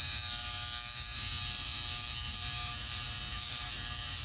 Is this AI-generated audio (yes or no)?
yes